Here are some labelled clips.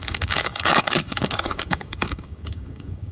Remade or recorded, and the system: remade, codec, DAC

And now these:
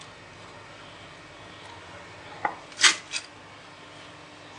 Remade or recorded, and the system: recorded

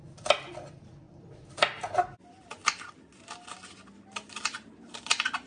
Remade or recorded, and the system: recorded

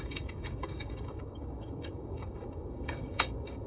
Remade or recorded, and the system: remade, codec, DAC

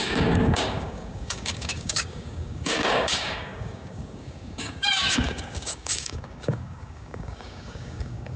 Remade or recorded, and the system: remade, codec, DAC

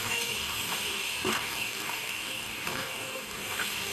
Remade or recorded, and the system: remade, codec, DAC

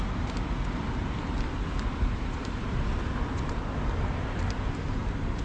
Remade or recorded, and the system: recorded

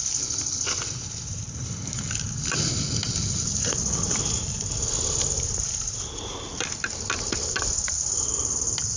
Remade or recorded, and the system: recorded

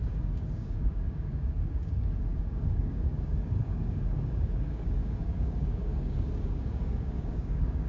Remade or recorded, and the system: remade, codec, DAC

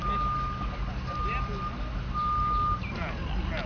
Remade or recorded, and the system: recorded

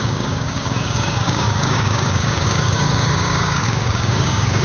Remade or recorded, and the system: remade, codec, DAC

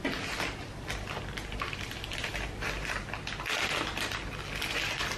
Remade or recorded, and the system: recorded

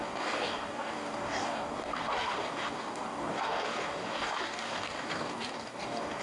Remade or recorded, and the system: remade, codec, DAC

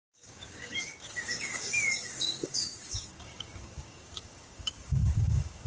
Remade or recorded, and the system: remade, codec, DAC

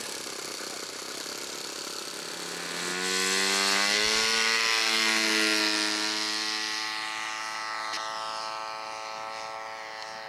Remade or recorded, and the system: recorded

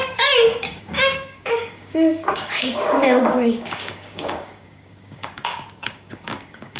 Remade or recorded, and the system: remade, codec, DAC